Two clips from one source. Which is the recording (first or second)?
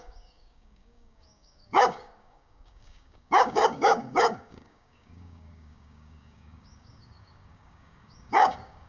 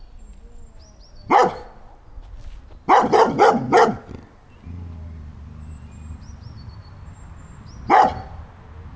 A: second